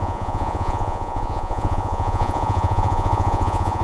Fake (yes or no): yes